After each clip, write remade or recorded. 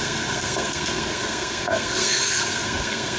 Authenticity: remade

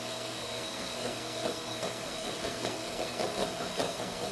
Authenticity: remade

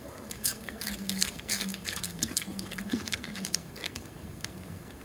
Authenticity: remade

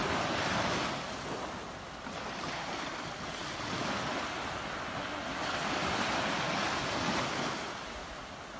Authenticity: recorded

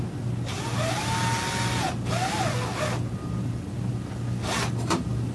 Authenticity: recorded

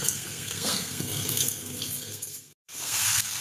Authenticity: remade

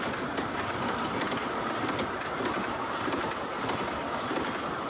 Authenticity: recorded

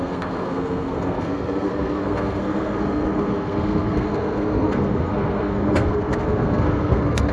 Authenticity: remade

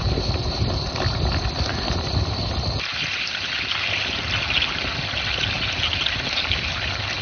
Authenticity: recorded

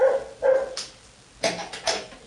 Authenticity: recorded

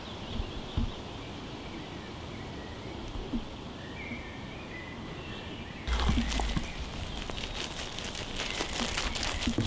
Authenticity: recorded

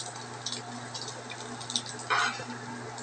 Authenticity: recorded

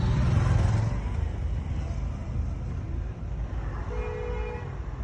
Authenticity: recorded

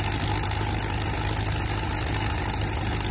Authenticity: recorded